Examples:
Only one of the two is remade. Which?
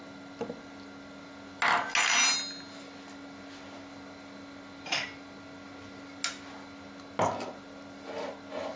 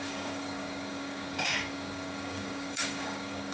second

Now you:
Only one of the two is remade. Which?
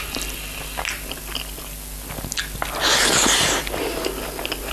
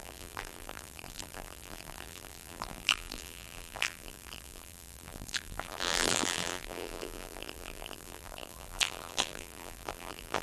second